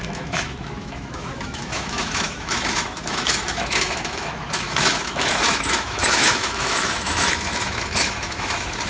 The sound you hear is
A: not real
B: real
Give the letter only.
A